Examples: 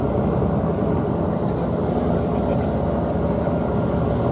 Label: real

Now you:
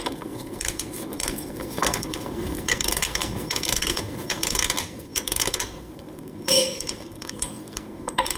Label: fake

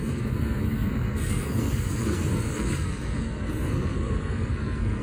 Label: fake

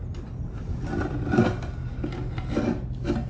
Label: real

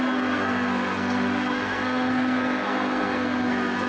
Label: fake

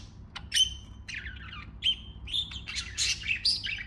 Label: real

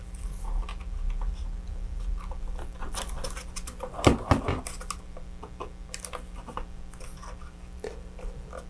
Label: real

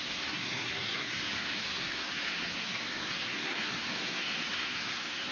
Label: fake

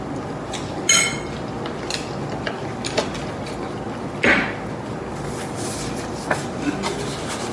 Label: real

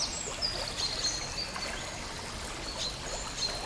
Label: real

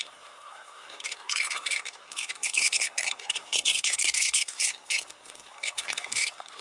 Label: fake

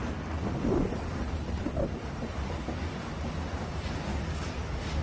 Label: real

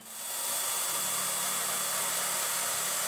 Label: real